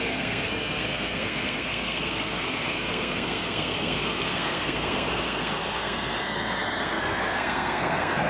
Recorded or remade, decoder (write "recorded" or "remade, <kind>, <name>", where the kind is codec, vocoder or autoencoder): remade, codec, SNAC